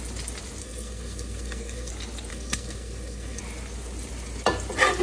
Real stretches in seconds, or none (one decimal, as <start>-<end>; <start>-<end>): 0.0-0.6; 1.9-2.3; 3.4-5.0